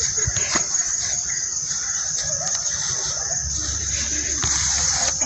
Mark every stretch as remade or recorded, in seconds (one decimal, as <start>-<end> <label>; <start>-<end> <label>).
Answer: 0.0-5.3 recorded